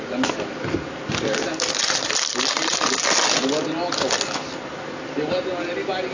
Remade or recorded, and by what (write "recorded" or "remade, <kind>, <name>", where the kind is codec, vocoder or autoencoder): recorded